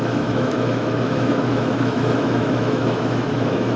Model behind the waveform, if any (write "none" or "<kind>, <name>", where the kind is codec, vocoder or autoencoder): autoencoder, DAC-VAE